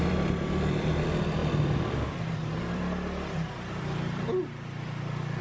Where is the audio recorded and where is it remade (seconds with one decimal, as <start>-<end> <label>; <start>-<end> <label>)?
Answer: 0.0-5.4 remade